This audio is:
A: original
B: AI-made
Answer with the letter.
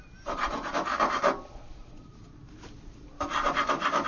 A